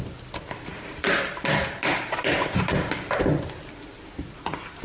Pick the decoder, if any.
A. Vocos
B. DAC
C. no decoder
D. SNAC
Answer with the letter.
C